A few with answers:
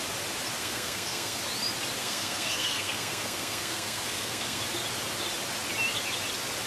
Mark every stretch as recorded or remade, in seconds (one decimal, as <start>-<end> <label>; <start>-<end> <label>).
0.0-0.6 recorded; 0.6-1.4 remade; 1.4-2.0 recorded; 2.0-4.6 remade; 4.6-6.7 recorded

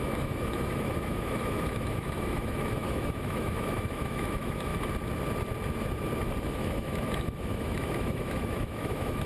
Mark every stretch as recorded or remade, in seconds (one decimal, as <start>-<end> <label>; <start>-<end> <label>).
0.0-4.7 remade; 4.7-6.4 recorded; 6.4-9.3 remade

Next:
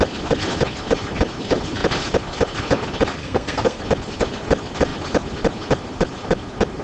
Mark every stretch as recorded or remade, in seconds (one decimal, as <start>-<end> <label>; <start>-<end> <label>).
0.0-3.2 recorded; 3.2-3.8 remade; 3.8-6.8 recorded